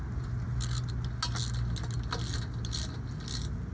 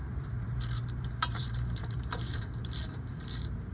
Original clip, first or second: first